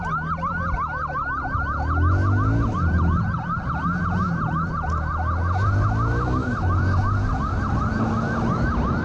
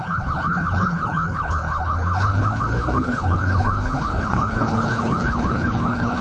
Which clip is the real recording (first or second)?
first